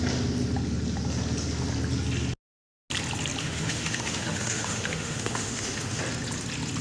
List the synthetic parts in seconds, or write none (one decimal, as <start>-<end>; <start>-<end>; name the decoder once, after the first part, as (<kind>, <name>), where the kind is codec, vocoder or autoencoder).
3.4-6.0 (autoencoder, DAC-VAE)